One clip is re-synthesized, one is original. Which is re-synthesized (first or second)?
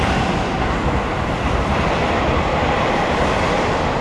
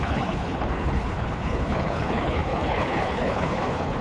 second